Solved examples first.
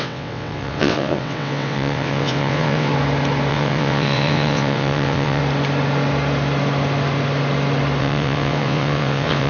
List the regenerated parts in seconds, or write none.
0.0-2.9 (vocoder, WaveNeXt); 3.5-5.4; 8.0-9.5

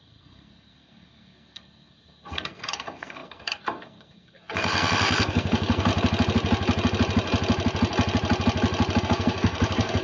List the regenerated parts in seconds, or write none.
0.0-5.9 (codec, SNAC); 9.0-10.0

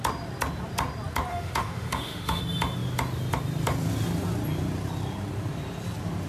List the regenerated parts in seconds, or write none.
1.3-2.4 (autoencoder, DAC-VAE)

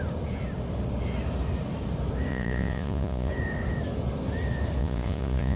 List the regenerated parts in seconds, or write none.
2.3-3.3 (vocoder, Vocos); 4.8-5.6

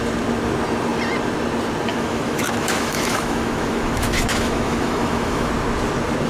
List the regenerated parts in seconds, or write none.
1.9-5.5 (autoencoder, DAC-VAE)

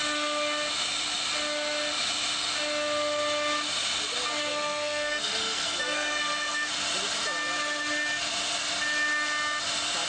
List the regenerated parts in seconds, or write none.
4.5-6.7 (codec, SNAC)

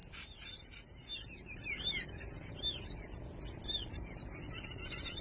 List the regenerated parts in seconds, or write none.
none